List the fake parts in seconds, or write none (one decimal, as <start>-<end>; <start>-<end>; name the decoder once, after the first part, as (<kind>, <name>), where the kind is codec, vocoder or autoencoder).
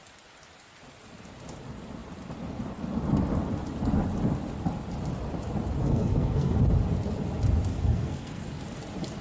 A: 5.8-6.6 (codec, SNAC); 7.7-8.4